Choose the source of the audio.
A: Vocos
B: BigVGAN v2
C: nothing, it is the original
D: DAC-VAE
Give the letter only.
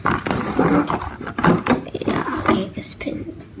C